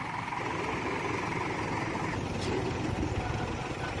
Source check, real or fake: real